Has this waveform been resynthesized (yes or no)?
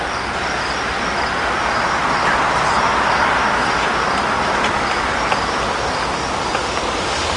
no